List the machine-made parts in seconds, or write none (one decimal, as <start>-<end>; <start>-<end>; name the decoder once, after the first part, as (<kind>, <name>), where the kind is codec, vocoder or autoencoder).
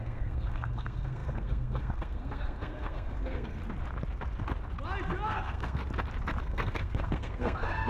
0.0-3.6 (codec, SNAC); 5.3-5.8; 6.4-7.9